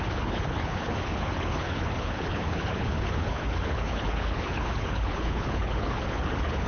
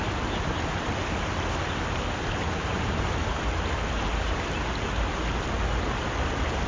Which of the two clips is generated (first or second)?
first